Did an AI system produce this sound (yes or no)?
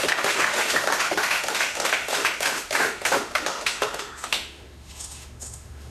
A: yes